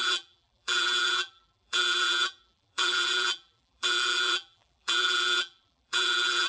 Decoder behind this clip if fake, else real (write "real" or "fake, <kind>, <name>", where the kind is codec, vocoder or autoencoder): fake, vocoder, BigVGAN v2